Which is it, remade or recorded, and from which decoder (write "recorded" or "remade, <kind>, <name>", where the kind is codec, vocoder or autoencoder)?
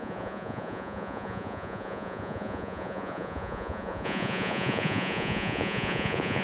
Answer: remade, vocoder, Vocos